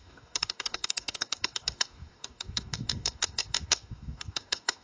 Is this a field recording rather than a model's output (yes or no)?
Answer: no